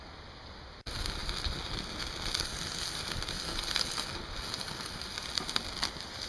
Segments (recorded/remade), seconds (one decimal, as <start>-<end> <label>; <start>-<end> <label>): 0.0-6.3 recorded